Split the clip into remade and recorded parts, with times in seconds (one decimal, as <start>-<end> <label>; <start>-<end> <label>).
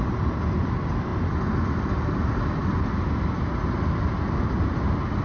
0.0-5.2 recorded